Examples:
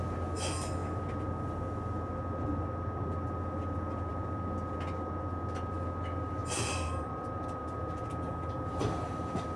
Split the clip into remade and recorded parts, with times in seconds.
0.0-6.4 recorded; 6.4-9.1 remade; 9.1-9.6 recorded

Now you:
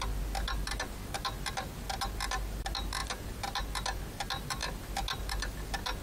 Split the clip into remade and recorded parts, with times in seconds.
0.0-6.0 recorded

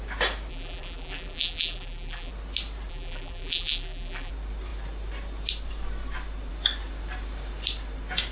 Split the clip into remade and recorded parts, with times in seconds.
0.0-0.5 recorded; 0.5-2.3 remade; 2.3-2.9 recorded; 2.9-4.3 remade; 4.3-8.3 recorded

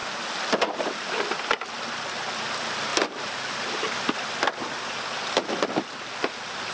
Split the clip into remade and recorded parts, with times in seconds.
0.0-2.9 recorded; 2.9-4.1 remade; 4.1-6.7 recorded

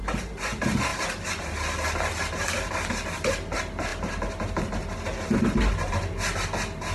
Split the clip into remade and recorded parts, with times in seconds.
0.0-6.9 recorded

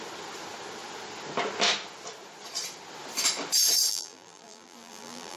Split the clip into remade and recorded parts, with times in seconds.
0.0-3.9 recorded; 3.9-5.4 remade

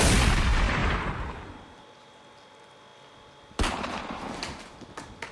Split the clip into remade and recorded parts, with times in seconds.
0.0-0.8 recorded; 0.8-1.4 remade; 1.4-5.3 recorded